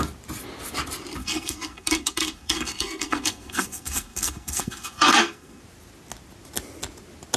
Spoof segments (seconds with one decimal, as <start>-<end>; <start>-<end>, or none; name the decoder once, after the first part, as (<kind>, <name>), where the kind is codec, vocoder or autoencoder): 1.2-5.6 (codec, SNAC)